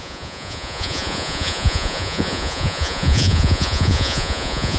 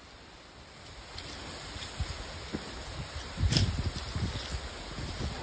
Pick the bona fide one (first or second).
second